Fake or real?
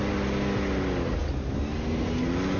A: real